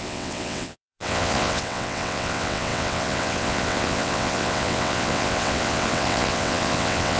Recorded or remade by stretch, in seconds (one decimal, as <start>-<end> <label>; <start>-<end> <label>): 0.0-7.2 remade